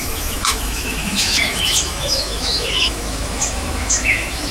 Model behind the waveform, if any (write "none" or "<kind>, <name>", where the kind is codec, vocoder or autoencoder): autoencoder, DAC-VAE